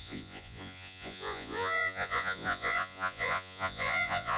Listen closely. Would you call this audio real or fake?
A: fake